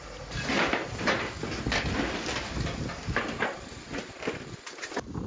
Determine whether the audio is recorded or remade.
recorded